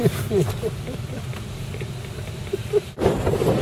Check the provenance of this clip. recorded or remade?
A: recorded